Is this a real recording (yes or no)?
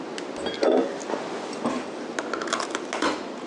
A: yes